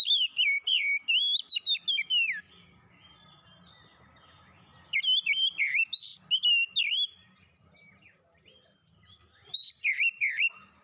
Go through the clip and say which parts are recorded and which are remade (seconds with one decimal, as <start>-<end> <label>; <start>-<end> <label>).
0.0-10.8 recorded